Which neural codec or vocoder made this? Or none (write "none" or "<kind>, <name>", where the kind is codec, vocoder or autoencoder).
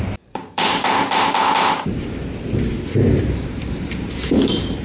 vocoder, BigVGAN v2